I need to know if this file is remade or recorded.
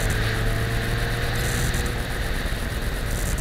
recorded